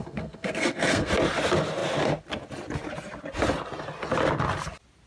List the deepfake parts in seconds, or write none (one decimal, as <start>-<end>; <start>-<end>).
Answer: 0.0-1.1